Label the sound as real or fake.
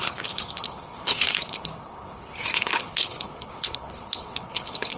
fake